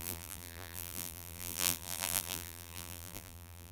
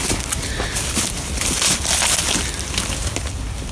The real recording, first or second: second